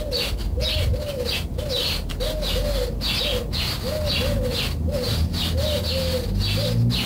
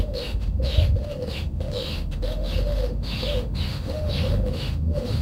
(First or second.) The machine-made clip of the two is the second